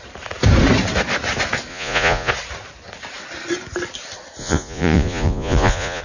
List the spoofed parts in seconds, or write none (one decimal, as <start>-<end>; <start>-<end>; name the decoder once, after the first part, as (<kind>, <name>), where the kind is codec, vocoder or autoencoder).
1.7-2.3 (vocoder, Vocos); 4.4-6.0